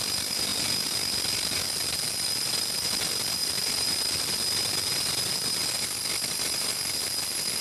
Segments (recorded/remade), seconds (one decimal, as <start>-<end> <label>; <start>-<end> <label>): 0.0-7.6 recorded